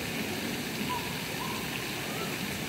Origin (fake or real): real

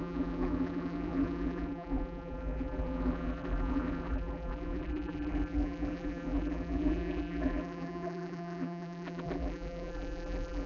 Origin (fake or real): fake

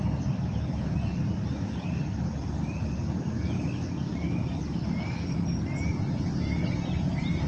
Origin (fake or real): real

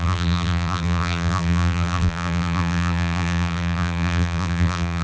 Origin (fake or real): fake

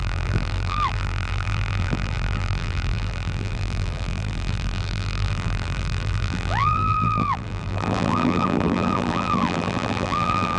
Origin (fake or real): fake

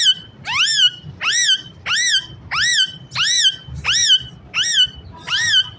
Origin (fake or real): fake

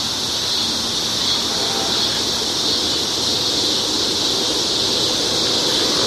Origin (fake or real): real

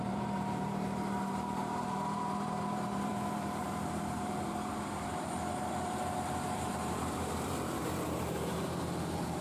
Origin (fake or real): fake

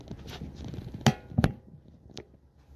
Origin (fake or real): real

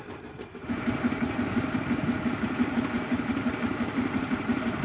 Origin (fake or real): fake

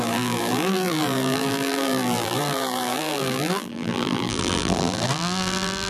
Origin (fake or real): fake